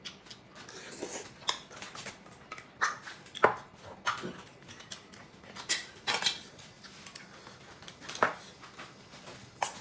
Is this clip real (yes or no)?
yes